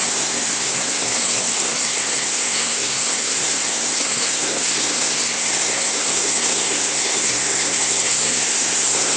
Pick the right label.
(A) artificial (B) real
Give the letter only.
A